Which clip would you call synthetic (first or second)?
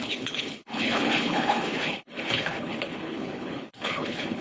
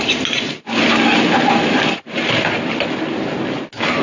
first